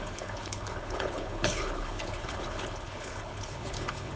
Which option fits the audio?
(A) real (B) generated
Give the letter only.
B